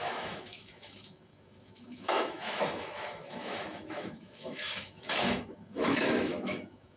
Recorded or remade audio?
remade